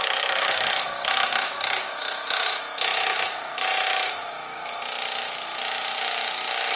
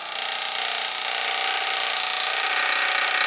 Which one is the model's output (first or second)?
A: first